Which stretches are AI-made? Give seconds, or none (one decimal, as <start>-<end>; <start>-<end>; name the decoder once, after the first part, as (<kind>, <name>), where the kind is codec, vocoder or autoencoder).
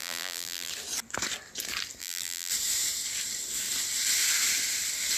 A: 0.0-0.7 (vocoder, BigVGAN v2); 2.0-2.5